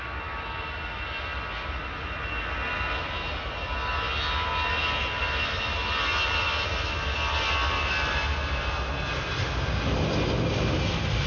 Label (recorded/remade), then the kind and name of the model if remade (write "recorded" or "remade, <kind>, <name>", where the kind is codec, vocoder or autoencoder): recorded